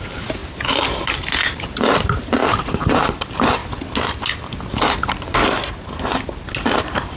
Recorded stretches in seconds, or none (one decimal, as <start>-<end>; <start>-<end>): 3.6-5.2; 6.1-6.8